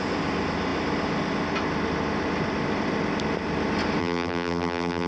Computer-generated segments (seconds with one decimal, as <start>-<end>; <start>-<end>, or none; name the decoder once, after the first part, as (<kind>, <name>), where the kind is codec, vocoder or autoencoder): 4.0-5.1 (vocoder, BigVGAN v2)